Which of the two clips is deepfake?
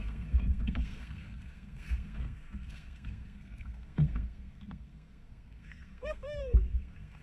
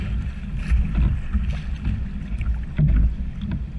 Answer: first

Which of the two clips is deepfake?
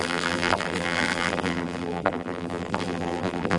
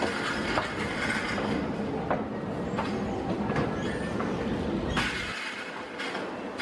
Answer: first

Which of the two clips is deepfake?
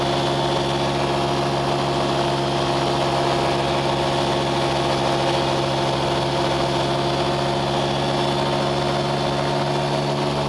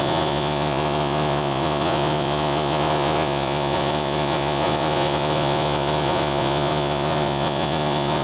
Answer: second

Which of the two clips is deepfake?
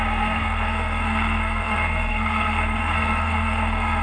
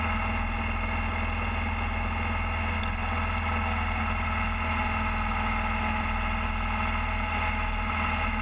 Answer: first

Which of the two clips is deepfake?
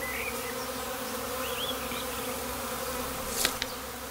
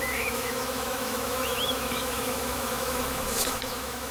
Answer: second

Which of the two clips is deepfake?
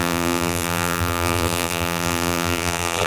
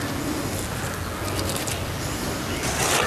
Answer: first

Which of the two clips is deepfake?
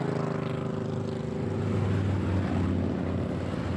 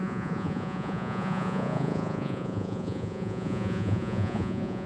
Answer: second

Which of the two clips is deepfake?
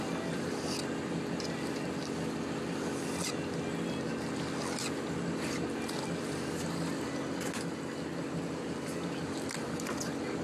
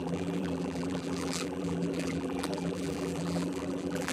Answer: second